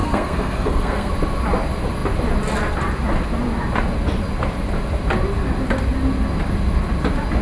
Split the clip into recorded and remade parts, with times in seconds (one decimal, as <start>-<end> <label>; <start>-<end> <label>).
0.0-1.1 remade; 1.1-7.4 recorded